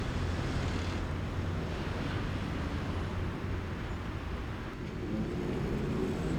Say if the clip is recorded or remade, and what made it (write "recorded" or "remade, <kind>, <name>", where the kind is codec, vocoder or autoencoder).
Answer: recorded